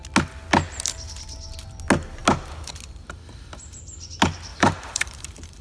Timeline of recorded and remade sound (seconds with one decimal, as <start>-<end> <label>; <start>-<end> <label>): 0.0-4.5 recorded; 4.5-5.6 remade